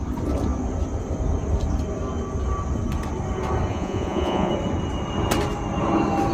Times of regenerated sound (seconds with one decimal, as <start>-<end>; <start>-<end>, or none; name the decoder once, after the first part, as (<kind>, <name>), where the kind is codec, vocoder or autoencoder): 3.7-4.5 (vocoder, Vocos)